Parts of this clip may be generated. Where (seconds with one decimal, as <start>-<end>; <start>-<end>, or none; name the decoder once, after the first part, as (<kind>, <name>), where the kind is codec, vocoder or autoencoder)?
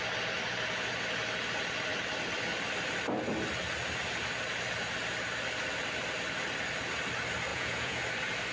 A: 7.5-8.0 (vocoder, Vocos)